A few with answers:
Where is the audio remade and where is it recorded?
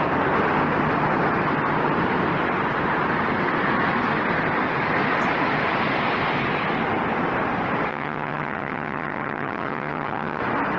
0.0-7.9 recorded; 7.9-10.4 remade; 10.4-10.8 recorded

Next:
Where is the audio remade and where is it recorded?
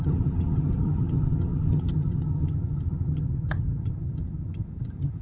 0.0-5.2 remade